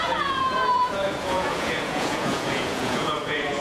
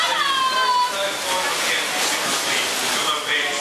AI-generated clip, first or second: first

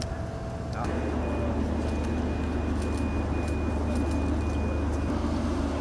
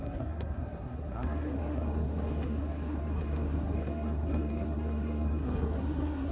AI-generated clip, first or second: second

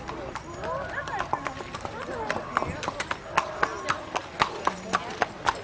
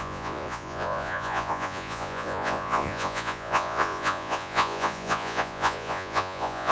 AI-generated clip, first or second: second